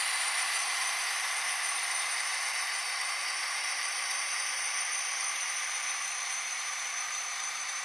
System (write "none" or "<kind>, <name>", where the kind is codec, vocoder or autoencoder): vocoder, BigVGAN v2